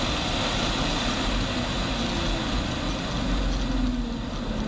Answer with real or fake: real